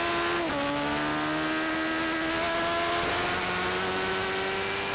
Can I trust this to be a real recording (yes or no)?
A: yes